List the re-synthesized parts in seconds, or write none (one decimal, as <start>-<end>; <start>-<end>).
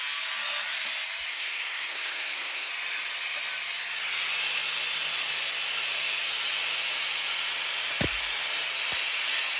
1.3-2.7